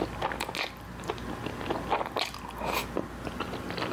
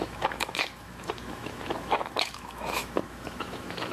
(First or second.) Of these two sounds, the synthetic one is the second